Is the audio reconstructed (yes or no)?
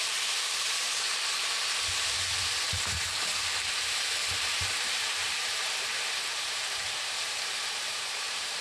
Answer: yes